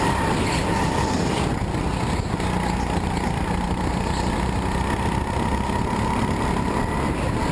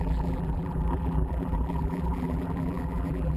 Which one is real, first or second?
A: first